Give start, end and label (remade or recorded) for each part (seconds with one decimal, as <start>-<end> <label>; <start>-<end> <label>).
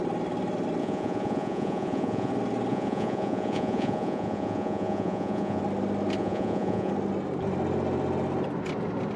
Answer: 0.0-0.8 recorded; 0.8-2.3 remade; 2.3-2.7 recorded; 2.7-5.6 remade; 5.6-6.2 recorded; 6.2-6.9 remade; 6.9-9.2 recorded